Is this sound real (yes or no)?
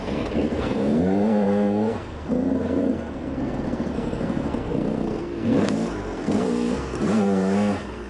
no